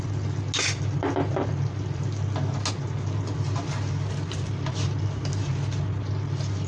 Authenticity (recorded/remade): recorded